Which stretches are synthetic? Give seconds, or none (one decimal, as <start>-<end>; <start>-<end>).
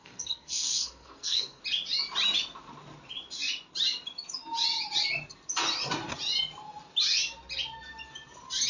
0.0-1.6